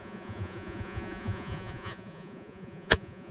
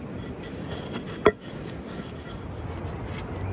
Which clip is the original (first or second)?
second